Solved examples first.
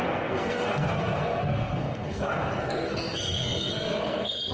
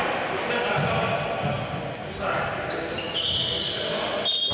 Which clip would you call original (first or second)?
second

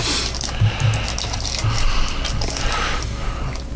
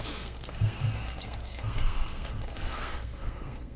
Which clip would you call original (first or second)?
first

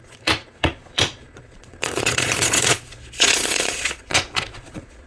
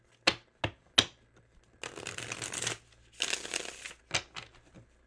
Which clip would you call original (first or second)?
second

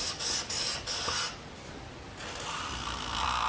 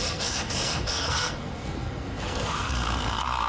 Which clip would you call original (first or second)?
first